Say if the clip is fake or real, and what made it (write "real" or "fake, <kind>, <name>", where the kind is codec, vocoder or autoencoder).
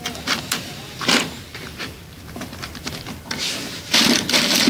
fake, vocoder, BigVGAN v2